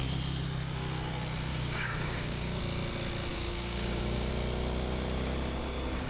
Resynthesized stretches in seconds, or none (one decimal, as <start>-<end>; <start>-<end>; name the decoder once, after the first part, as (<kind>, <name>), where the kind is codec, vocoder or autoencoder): 1.5-2.6 (codec, DAC); 3.3-4.3

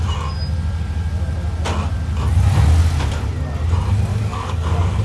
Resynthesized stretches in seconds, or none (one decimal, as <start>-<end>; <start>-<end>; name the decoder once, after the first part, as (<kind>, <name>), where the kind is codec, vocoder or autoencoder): 4.1-5.0 (codec, DAC)

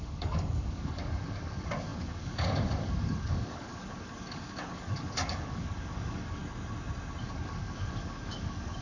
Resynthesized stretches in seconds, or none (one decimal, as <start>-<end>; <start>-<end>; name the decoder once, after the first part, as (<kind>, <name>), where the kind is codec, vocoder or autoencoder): 0.0-6.4 (codec, DAC); 7.2-8.8

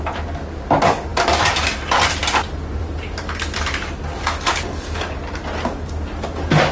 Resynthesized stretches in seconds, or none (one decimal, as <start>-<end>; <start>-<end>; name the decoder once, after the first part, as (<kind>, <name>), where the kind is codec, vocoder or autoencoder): none